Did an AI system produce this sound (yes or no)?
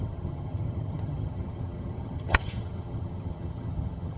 yes